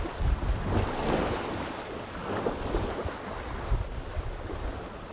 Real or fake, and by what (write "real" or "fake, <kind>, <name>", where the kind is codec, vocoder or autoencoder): real